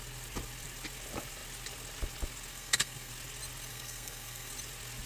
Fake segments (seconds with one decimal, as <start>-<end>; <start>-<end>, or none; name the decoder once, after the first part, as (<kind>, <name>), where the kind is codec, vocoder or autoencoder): 2.5-3.1 (codec, SNAC); 3.7-4.5